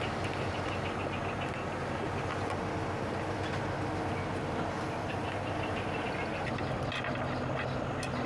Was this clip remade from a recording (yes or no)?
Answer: no